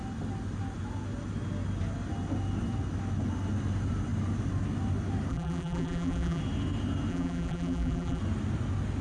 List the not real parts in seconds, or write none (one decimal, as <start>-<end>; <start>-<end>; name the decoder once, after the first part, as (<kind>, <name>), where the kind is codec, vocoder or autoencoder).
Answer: 5.3-6.4 (vocoder, BigVGAN v2); 7.1-8.2